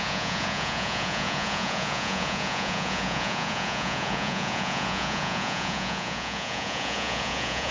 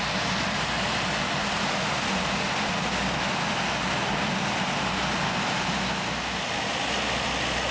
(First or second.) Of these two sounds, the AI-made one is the first